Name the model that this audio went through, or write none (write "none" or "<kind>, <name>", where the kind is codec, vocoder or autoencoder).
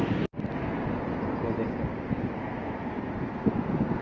none